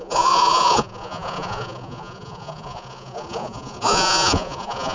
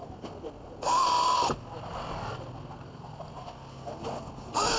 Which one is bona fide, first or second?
second